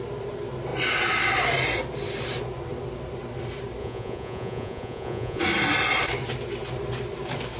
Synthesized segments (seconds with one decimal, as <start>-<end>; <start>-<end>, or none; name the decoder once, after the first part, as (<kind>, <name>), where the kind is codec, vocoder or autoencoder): 3.8-5.4 (vocoder, Vocos)

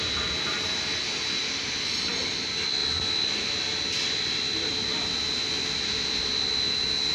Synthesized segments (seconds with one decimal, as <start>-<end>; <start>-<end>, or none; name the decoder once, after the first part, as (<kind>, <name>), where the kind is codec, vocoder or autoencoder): none